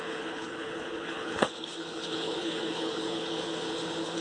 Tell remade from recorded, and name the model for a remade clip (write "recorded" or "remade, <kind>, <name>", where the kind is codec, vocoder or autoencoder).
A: remade, codec, HILCodec